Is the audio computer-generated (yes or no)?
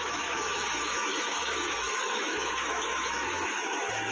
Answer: yes